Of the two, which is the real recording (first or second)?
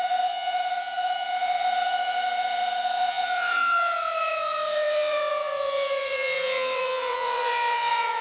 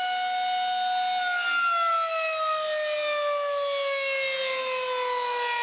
second